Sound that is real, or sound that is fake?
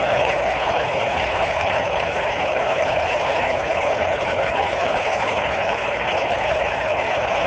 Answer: fake